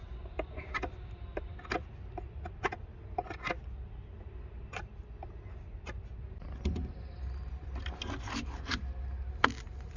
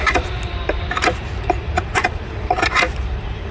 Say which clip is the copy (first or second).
second